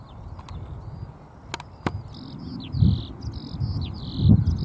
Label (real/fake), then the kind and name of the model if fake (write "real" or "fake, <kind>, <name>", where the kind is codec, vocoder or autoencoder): real